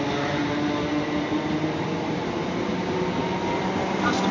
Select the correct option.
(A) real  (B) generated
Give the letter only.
A